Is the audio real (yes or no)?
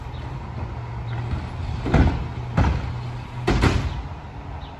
yes